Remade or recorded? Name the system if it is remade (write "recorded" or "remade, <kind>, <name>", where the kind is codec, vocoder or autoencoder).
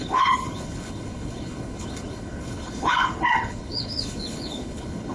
remade, codec, HILCodec